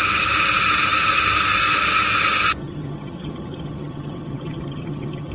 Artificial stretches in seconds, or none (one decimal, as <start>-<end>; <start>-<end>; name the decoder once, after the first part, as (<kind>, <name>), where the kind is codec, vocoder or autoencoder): 2.6-5.3 (vocoder, HiFi-GAN)

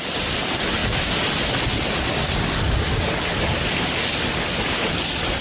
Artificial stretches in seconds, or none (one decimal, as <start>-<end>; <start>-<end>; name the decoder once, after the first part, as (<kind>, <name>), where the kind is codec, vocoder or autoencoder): none

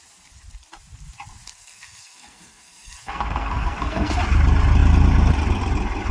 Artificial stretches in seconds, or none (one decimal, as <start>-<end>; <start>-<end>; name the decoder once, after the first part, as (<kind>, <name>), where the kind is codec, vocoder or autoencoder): 1.5-4.2 (codec, SNAC)